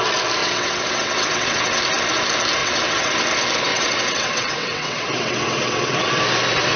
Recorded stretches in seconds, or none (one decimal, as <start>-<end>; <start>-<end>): 0.0-0.4; 1.8-2.6; 3.1-3.7; 6.1-6.8

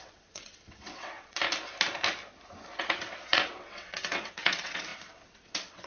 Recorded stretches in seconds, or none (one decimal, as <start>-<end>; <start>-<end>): 1.4-2.8

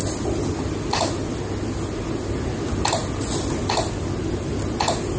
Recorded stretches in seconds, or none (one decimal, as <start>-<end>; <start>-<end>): 0.0-5.2

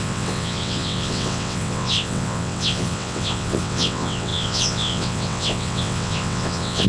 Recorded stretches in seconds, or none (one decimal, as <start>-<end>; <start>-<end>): none

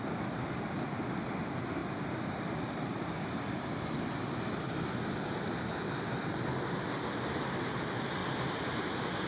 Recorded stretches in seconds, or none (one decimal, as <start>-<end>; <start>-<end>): 0.0-9.3

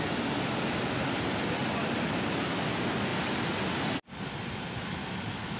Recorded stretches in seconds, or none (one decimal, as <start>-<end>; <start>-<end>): 0.0-5.6